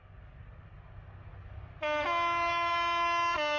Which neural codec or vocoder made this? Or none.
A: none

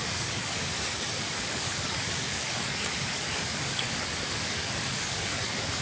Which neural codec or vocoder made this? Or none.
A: codec, DAC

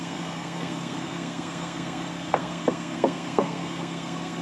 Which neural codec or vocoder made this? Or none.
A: codec, SNAC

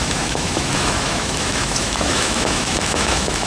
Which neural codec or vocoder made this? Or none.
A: autoencoder, DAC-VAE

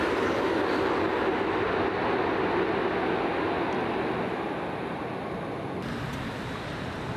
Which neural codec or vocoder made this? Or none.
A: none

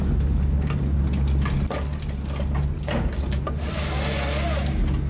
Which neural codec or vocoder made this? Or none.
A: none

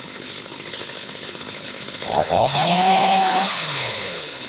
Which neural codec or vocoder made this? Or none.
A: codec, HILCodec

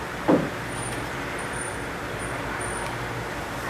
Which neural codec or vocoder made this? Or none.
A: none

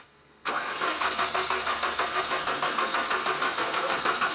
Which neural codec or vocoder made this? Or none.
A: codec, SNAC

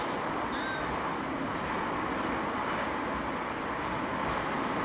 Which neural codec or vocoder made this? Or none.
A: none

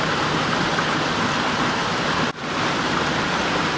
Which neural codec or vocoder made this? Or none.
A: none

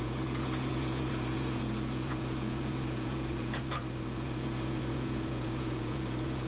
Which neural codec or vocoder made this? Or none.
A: vocoder, Vocos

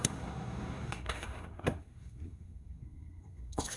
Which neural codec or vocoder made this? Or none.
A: codec, SNAC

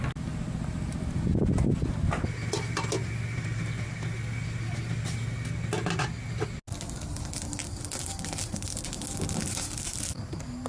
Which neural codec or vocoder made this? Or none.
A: none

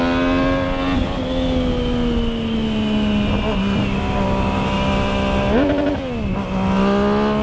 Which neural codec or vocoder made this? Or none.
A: none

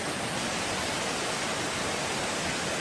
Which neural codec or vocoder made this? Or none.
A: none